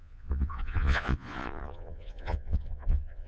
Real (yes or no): no